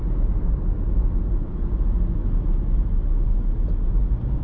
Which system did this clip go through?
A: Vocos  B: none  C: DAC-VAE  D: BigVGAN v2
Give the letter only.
B